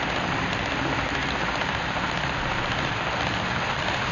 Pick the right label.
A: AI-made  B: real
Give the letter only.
B